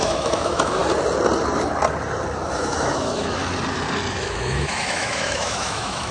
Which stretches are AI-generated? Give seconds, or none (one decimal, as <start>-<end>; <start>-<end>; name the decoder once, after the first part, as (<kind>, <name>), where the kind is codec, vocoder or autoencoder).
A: 0.0-0.8 (autoencoder, DAC-VAE); 2.5-3.4; 4.1-6.1